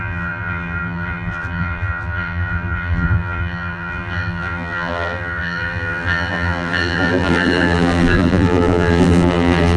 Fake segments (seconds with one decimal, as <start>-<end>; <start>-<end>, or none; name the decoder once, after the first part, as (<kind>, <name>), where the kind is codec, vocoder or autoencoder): 0.0-9.8 (vocoder, BigVGAN v2)